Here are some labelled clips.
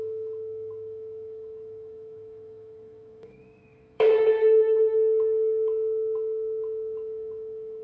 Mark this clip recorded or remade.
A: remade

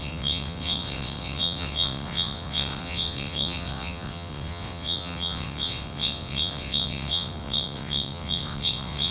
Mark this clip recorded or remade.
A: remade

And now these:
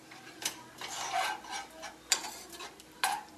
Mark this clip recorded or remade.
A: recorded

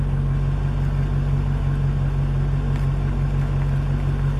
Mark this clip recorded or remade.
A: recorded